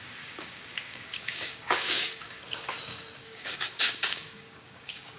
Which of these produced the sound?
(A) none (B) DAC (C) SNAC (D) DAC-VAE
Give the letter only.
B